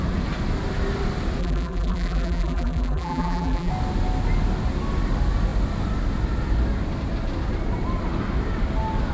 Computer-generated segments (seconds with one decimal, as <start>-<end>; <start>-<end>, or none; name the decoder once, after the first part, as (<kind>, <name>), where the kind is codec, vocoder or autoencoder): 1.4-3.7 (vocoder, BigVGAN v2)